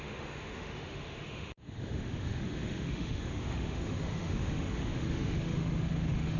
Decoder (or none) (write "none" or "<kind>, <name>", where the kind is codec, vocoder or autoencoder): autoencoder, DAC-VAE